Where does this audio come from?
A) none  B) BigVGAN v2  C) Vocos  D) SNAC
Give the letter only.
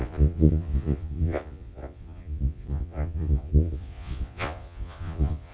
C